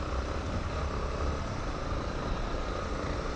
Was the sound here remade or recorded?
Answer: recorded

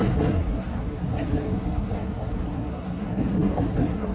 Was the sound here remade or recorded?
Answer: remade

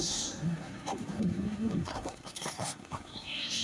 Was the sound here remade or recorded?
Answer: remade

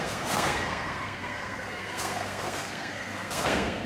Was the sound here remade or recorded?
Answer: remade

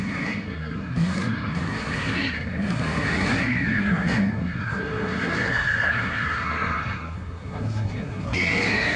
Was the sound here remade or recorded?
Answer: remade